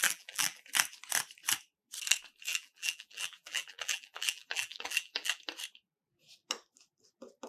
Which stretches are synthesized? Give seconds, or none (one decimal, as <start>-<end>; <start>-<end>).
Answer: 0.0-0.6; 2.5-5.4